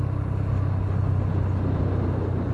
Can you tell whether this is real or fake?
real